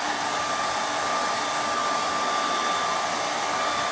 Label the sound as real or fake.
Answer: real